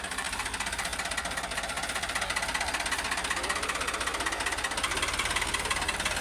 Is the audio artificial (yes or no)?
no